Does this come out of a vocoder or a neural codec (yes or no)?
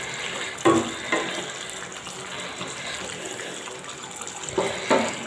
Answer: no